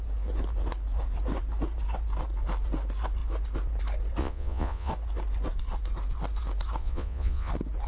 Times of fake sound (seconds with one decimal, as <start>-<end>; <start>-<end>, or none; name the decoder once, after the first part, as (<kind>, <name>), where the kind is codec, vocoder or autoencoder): 4.2-4.9 (vocoder, Vocos); 6.8-7.5